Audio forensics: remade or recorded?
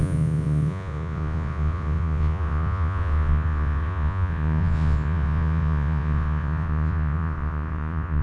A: remade